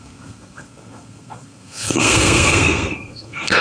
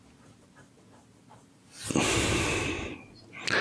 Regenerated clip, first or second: first